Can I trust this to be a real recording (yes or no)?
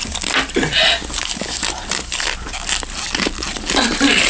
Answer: yes